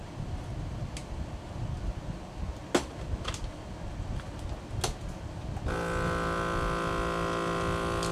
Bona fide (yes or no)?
yes